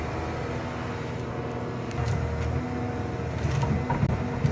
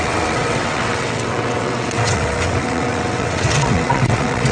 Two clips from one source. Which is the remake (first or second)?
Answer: second